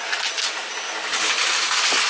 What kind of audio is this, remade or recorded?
recorded